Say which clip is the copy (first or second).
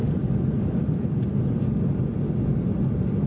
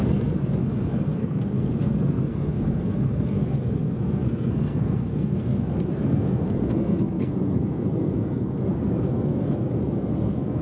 second